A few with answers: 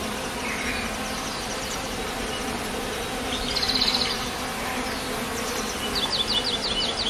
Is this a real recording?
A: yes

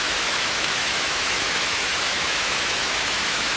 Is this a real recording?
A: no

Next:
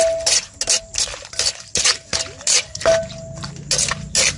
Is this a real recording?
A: yes